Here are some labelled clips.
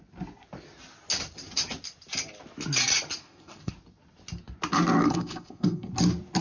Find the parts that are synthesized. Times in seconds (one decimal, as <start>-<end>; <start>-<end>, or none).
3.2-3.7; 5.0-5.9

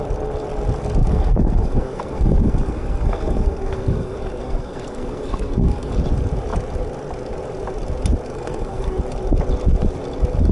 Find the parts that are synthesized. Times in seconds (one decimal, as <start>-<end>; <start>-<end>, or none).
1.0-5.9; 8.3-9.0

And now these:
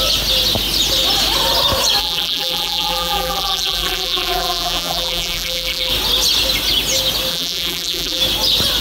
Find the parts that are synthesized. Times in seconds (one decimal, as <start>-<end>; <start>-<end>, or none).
2.0-5.9; 7.3-8.2

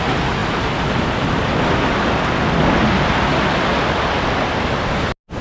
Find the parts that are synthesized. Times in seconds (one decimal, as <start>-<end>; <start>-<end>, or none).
none

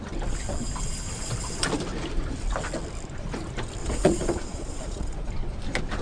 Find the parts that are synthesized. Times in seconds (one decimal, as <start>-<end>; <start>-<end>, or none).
3.8-5.3